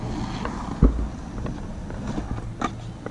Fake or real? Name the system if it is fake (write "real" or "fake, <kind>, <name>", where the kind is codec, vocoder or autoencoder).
real